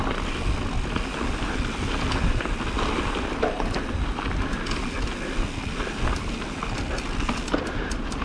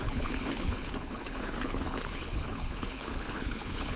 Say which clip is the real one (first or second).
first